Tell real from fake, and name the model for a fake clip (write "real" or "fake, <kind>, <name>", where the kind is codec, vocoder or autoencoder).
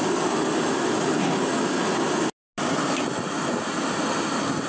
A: real